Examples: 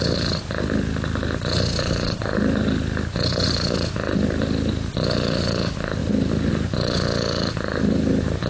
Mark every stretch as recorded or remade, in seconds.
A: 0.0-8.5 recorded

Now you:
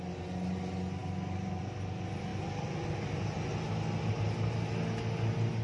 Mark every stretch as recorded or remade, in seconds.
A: 0.0-5.6 recorded